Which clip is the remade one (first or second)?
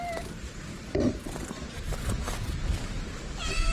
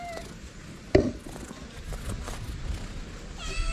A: first